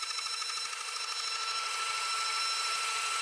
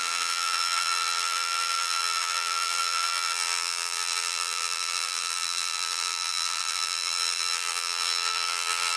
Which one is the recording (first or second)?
first